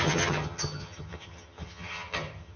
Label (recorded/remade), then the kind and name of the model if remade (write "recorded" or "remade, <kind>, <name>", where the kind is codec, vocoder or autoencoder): remade, vocoder, HiFi-GAN